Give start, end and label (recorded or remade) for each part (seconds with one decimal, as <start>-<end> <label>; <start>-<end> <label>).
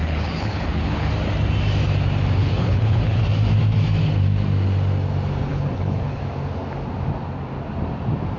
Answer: 0.0-1.1 remade; 1.1-2.4 recorded; 2.4-3.2 remade; 3.2-5.5 recorded; 5.5-6.2 remade; 6.2-8.4 recorded